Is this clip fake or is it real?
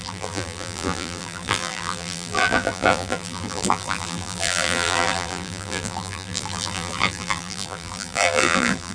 fake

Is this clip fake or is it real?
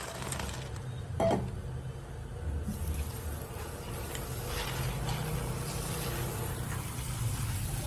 real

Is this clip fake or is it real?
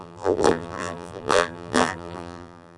fake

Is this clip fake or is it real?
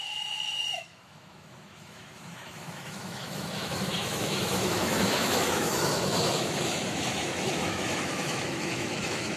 fake